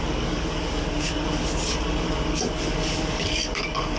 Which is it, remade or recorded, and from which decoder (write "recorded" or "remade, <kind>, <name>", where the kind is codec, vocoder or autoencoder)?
remade, codec, DAC